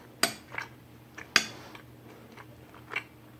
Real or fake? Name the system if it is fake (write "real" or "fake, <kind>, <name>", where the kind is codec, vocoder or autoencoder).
real